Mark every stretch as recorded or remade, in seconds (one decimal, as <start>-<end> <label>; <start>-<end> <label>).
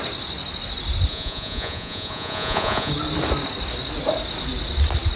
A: 0.0-1.1 recorded; 1.1-2.9 remade; 2.9-5.2 recorded